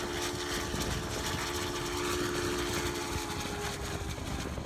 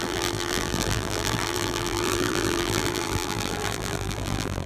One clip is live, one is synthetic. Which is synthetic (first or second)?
second